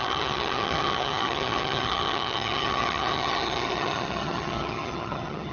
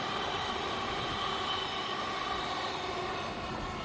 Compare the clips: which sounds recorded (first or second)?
second